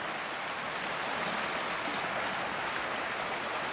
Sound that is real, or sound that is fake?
real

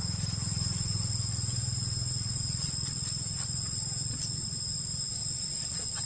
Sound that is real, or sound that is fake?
real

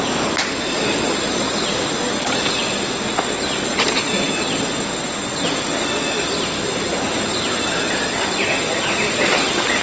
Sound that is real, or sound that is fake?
real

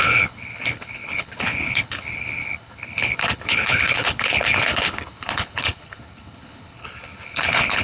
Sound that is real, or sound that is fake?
fake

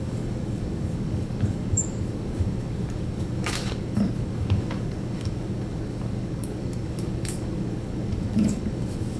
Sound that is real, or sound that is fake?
fake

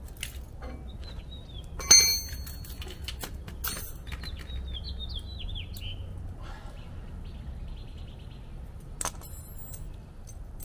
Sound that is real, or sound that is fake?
real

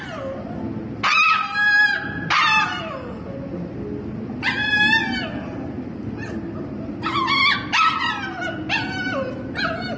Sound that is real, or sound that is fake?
real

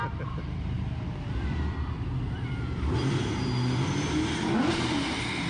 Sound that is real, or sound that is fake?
fake